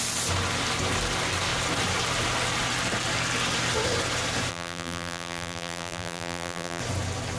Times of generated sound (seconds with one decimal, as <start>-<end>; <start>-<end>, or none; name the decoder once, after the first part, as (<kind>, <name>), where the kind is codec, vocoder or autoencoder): 4.5-6.8 (vocoder, BigVGAN v2)